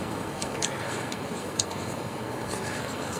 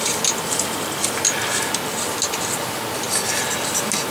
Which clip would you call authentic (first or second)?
second